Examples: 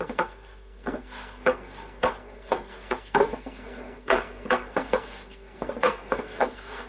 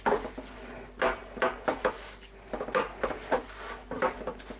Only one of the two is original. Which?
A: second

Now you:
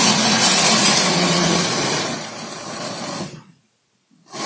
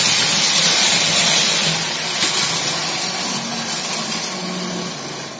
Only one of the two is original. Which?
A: second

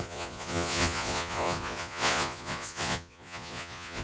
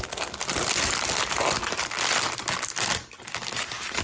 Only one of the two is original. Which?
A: second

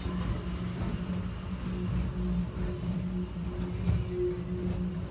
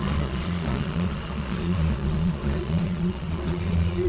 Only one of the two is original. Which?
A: first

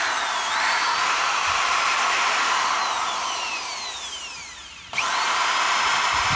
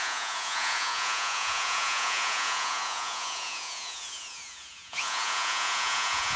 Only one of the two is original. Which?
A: first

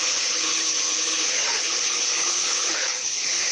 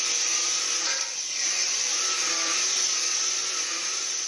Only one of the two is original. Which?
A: second